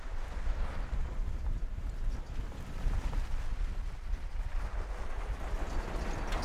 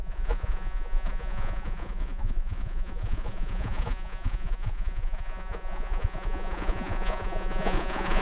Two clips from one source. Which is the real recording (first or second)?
first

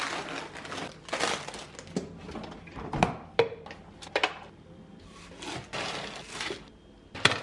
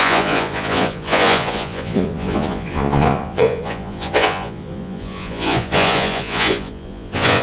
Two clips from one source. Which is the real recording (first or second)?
first